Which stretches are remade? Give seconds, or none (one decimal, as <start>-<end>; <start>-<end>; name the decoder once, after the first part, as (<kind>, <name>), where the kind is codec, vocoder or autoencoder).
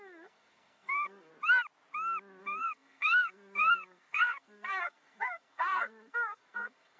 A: 0.0-1.3 (codec, SNAC); 2.4-7.0